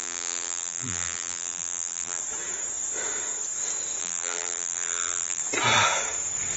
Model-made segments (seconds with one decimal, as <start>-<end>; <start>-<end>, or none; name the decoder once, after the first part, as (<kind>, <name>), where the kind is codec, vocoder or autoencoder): 0.0-2.2 (vocoder, BigVGAN v2); 4.0-5.4